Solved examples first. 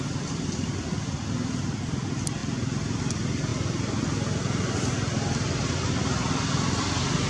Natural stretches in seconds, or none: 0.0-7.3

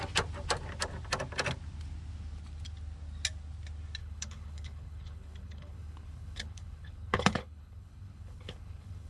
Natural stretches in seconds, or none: 0.0-4.0

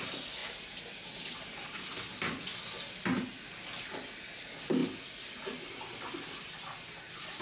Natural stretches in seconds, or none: 0.0-7.4

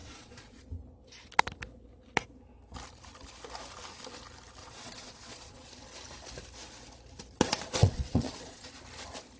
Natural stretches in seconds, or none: 0.6-4.6; 5.7-7.8; 8.7-9.4